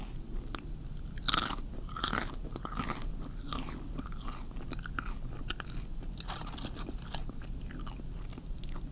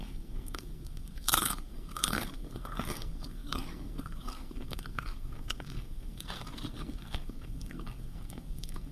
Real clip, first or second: first